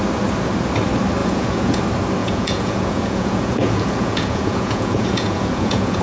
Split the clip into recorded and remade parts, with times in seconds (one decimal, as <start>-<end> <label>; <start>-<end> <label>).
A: 0.0-1.2 recorded; 1.2-1.8 remade; 1.8-2.2 recorded; 2.2-6.0 remade